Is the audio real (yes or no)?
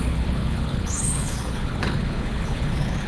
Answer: no